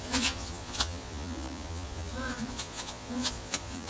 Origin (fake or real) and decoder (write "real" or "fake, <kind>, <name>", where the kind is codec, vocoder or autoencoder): fake, vocoder, Vocos